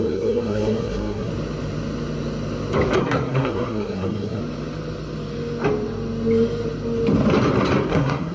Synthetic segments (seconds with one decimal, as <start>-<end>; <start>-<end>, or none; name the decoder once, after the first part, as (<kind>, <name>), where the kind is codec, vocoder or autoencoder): 0.0-1.3 (codec, SNAC); 3.0-4.4; 7.9-8.3